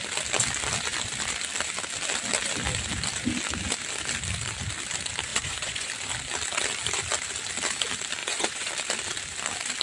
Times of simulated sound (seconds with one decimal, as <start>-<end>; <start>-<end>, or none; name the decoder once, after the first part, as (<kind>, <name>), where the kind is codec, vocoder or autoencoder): 5.3-5.9 (vocoder, Vocos); 8.2-8.7